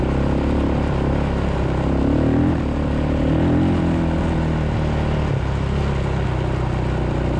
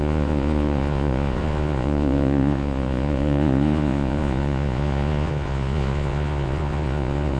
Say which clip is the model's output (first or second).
second